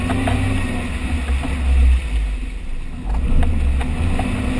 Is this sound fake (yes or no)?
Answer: no